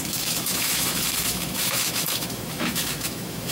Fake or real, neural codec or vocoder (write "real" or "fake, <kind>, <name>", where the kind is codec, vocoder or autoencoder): fake, autoencoder, DAC-VAE